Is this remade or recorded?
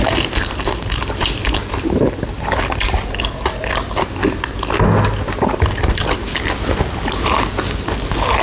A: recorded